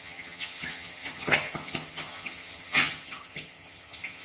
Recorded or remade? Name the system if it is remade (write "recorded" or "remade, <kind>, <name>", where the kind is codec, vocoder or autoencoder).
remade, vocoder, HiFi-GAN